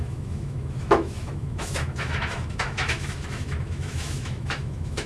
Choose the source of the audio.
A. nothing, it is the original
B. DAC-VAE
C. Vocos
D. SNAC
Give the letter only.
B